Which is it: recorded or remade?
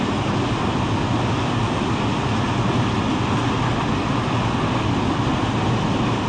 recorded